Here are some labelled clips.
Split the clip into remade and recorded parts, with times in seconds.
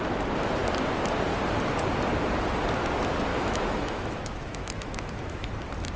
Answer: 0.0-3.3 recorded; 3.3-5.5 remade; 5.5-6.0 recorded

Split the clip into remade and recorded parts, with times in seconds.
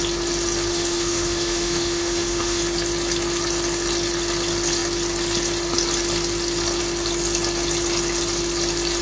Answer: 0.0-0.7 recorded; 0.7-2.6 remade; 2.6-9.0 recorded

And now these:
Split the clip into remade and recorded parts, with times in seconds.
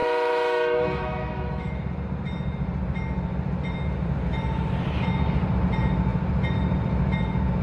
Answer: 0.0-1.9 remade; 1.9-7.6 recorded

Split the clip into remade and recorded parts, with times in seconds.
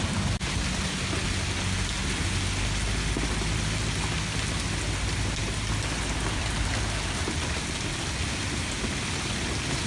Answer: 0.0-9.9 recorded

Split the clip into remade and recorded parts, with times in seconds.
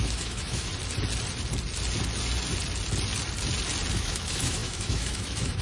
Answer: 0.0-0.7 remade; 0.7-3.9 recorded; 3.9-5.6 remade